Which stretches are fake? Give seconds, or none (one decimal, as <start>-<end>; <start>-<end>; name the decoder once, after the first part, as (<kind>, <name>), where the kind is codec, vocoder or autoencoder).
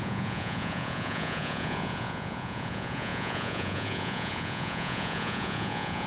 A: 0.0-6.1 (vocoder, Vocos)